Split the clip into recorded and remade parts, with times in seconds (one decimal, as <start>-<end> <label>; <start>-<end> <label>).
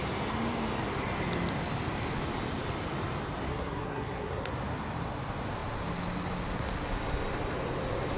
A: 0.0-3.5 recorded; 3.5-4.5 remade; 4.5-8.2 recorded